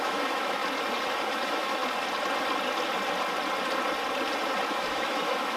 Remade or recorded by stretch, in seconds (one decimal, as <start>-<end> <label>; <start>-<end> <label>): 0.0-0.6 remade; 0.6-1.2 recorded; 1.2-1.8 remade; 1.8-4.7 recorded; 4.7-5.6 remade